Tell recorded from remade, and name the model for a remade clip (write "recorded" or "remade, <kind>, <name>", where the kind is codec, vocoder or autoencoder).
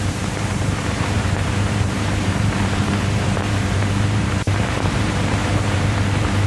remade, vocoder, BigVGAN v2